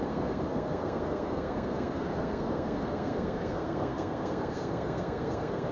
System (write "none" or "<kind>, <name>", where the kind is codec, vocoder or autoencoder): codec, SNAC